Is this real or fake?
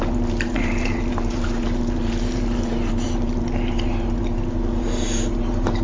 fake